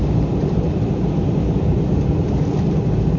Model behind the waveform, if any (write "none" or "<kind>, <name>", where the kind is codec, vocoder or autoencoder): none